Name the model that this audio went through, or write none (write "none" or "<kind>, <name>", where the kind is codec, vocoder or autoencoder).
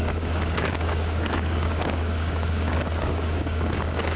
codec, DAC